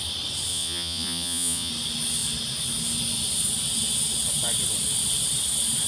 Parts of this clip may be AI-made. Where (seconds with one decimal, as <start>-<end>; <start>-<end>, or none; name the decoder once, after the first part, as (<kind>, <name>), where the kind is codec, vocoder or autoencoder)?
0.5-1.7 (vocoder, Vocos)